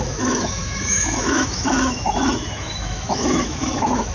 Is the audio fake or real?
fake